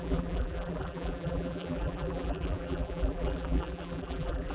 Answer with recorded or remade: remade